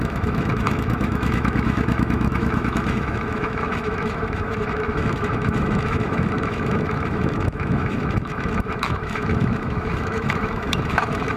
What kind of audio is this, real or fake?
fake